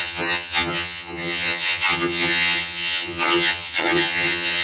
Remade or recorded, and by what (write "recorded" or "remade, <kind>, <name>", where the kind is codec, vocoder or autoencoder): remade, vocoder, HiFi-GAN